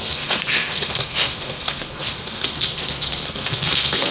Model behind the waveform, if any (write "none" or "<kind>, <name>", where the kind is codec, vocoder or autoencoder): codec, SNAC